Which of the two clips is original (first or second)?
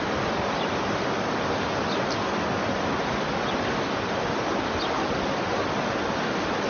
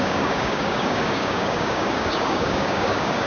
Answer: first